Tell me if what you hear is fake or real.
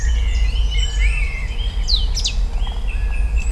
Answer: real